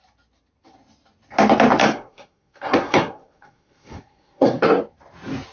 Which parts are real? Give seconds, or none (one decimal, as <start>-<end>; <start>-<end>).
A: 0.0-1.8; 4.8-5.5